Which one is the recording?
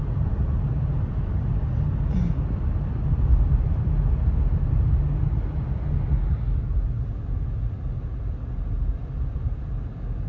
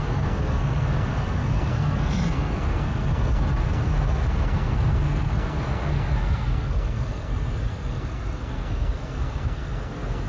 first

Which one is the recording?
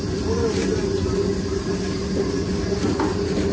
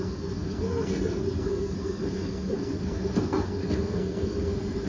first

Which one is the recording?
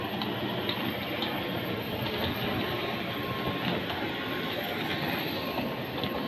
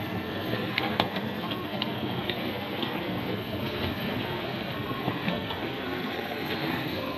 first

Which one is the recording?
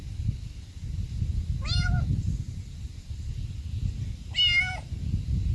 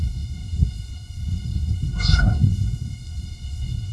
first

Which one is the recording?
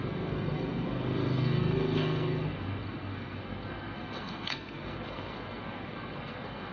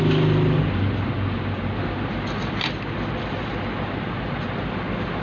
second